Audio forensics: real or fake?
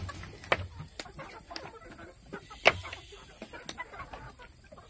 real